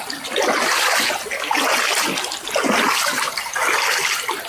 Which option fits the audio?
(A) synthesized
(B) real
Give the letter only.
B